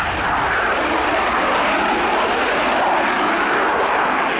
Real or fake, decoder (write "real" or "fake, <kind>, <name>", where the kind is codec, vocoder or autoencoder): real